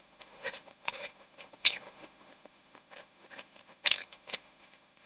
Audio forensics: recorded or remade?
remade